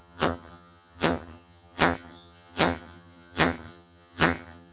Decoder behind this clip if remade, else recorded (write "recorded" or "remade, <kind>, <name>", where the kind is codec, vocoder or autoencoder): remade, vocoder, HiFi-GAN